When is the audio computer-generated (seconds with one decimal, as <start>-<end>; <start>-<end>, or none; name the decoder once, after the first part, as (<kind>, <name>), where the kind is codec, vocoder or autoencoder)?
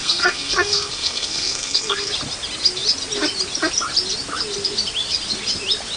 0.0-2.1 (codec, SNAC)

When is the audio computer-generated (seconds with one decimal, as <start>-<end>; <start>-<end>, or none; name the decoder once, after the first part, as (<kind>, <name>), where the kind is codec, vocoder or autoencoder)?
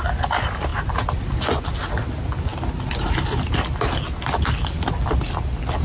none